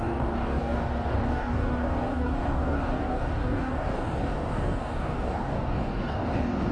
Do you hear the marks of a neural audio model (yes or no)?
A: yes